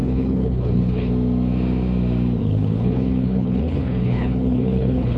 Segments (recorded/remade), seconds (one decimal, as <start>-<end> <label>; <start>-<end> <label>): 0.0-1.1 remade; 1.1-2.4 recorded; 2.4-5.2 remade